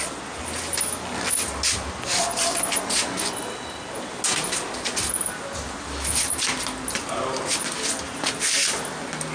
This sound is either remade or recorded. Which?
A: recorded